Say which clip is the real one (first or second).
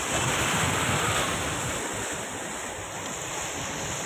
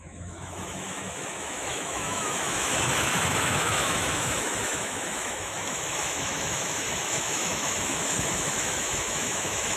first